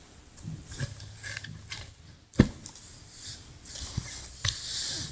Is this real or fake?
real